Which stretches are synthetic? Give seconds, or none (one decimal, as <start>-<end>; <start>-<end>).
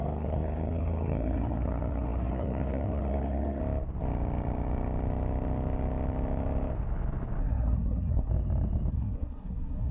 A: 0.0-3.6; 7.4-8.3; 8.9-9.9